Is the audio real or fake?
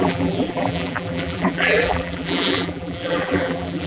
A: fake